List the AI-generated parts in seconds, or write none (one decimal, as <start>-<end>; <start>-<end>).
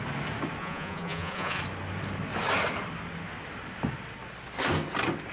0.6-1.6